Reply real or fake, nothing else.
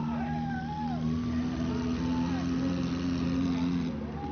real